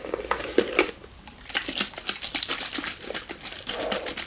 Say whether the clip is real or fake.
real